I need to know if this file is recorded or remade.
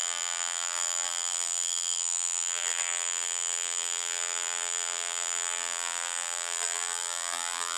remade